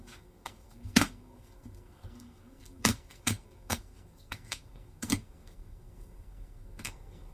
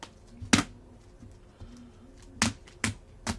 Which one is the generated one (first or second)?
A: first